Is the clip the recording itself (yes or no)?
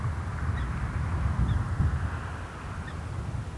yes